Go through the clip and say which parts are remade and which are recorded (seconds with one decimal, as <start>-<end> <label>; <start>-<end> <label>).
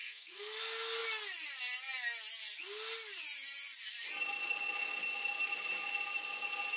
0.0-0.6 remade; 0.6-6.8 recorded